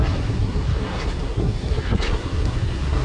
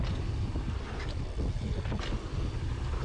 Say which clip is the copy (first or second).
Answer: first